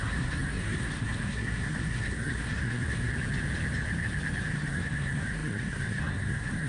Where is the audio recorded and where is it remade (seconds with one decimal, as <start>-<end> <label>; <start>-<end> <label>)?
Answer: 0.0-3.1 remade; 3.1-4.5 recorded; 4.5-6.7 remade